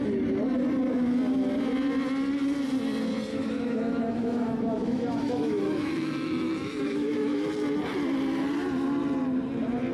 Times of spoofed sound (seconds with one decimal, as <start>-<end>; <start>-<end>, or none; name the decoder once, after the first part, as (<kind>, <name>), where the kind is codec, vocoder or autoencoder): 3.3-7.5 (autoencoder, DAC-VAE)